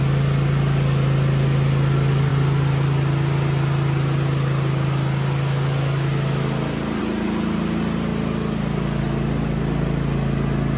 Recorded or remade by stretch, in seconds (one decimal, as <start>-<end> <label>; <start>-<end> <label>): 0.0-10.8 recorded